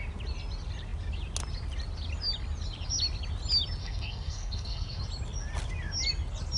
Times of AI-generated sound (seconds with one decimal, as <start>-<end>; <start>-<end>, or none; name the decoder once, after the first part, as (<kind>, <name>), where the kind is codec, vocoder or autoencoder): 3.8-5.0 (codec, SNAC)